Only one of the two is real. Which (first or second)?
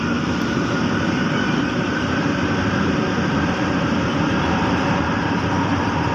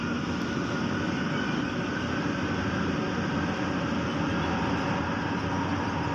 second